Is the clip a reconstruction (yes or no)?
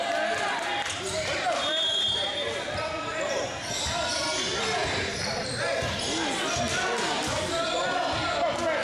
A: no